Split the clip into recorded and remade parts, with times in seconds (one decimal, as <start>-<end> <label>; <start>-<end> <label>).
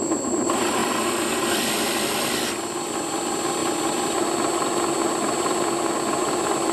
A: 0.0-6.7 recorded